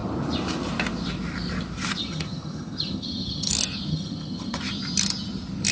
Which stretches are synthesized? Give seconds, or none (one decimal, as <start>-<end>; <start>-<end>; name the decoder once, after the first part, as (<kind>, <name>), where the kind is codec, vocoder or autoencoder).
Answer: 2.0-3.5 (vocoder, HiFi-GAN); 3.9-4.6